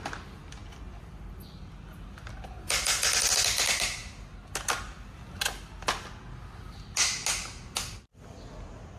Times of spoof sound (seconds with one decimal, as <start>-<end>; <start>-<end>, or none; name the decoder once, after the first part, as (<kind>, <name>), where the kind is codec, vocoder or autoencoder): none